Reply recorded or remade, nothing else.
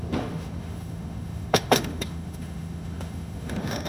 remade